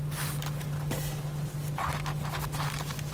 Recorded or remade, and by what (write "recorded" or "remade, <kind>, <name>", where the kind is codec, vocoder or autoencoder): recorded